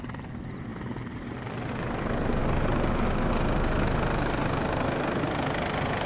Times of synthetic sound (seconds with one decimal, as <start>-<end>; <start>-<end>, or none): none